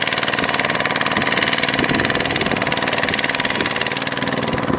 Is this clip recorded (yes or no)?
yes